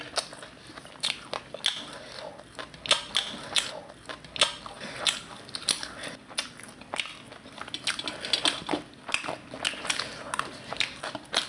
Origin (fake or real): real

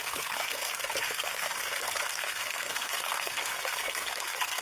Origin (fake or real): fake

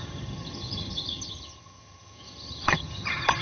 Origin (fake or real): fake